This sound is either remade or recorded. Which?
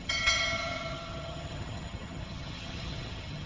remade